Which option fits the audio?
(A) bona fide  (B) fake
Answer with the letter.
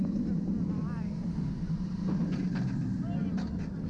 A